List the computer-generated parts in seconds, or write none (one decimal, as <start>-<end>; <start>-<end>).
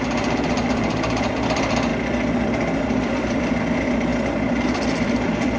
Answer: 0.0-1.9; 2.8-4.1; 4.6-5.6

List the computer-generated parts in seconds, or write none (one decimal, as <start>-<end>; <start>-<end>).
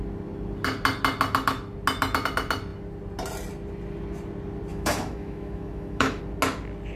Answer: 4.7-6.2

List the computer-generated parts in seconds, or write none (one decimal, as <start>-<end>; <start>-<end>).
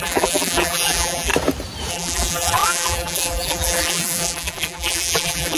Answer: 0.0-1.3; 1.9-5.6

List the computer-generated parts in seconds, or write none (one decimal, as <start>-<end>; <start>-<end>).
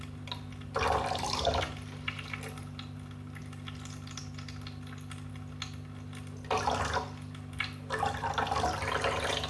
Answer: 3.4-4.2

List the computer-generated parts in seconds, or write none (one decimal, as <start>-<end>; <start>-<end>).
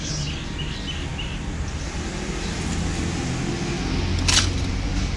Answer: none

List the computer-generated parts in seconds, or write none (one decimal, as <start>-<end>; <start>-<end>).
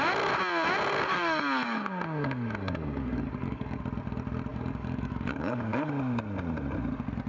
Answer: 1.1-3.8; 4.5-5.9